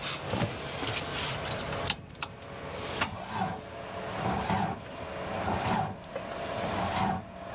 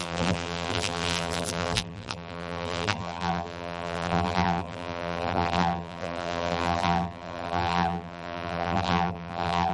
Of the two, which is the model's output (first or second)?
second